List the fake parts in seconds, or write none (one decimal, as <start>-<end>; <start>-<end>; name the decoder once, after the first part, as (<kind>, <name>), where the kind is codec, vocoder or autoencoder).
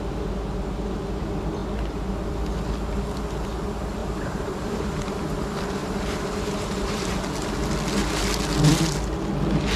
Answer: 4.0-4.9 (vocoder, BigVGAN v2); 5.8-7.2